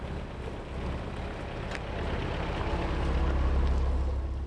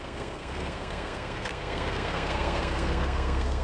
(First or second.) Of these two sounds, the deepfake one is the second